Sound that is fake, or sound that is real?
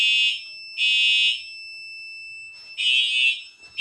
real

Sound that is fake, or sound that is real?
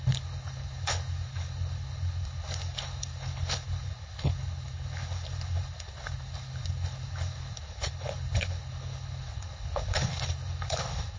fake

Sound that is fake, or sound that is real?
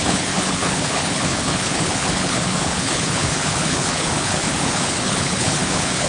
fake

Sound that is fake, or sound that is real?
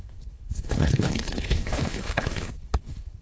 fake